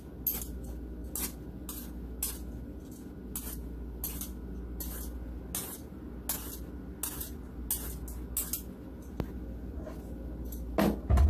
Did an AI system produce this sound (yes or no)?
no